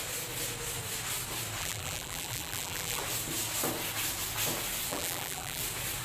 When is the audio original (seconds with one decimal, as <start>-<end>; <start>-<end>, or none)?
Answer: 0.0-1.6; 3.0-4.9; 5.6-6.0